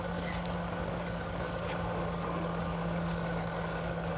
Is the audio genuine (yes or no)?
no